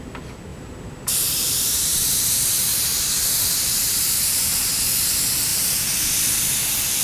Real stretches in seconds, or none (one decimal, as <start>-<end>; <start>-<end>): 0.0-0.5; 4.7-5.5; 6.2-7.0